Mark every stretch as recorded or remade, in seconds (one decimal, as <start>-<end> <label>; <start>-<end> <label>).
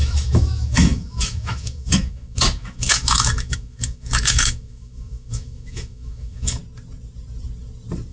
0.0-6.6 remade; 6.6-8.1 recorded